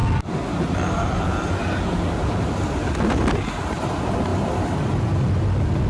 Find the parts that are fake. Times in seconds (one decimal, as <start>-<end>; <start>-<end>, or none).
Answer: none